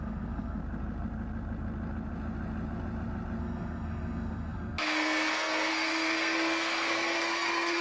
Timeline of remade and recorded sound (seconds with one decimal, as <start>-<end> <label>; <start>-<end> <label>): 0.0-0.6 remade; 0.6-3.4 recorded; 3.4-7.8 remade